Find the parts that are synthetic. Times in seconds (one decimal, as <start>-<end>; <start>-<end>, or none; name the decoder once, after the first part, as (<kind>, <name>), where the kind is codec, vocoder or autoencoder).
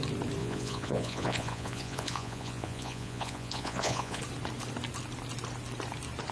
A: 0.4-4.2 (vocoder, Vocos)